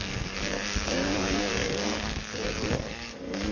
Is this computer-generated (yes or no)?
yes